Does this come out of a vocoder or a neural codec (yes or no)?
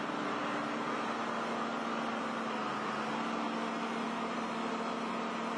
no